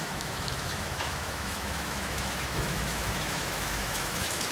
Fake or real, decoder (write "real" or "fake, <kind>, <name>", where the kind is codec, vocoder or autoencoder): fake, autoencoder, DAC-VAE